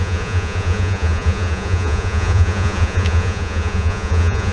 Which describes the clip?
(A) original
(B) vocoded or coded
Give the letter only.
B